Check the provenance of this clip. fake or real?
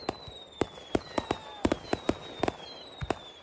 real